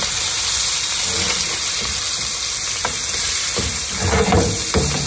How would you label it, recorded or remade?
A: recorded